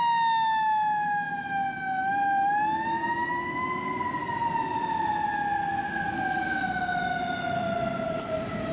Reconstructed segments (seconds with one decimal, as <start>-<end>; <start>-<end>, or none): none